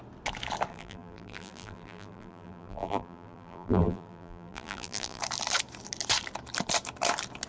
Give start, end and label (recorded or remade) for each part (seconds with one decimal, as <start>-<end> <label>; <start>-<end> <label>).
0.0-0.7 recorded; 0.7-5.2 remade; 5.2-7.5 recorded